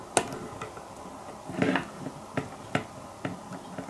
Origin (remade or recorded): recorded